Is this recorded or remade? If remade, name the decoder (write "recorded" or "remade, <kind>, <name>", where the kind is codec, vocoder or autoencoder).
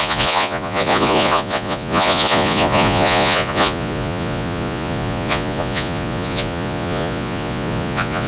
remade, vocoder, Vocos